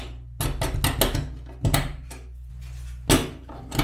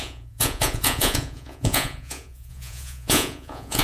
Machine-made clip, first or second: second